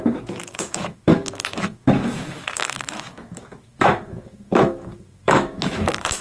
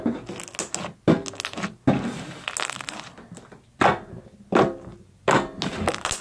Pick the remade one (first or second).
first